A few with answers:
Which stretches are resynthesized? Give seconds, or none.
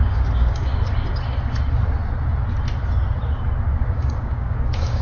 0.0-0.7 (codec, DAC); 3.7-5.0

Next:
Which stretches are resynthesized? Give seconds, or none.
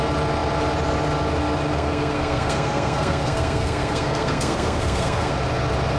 1.7-5.3 (codec, SNAC)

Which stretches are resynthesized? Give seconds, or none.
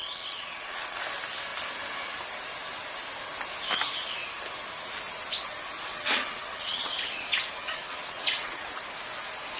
0.0-1.0 (vocoder, WaveNeXt); 5.9-6.9; 7.6-8.8